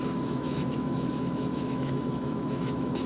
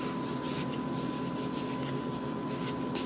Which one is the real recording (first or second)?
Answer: second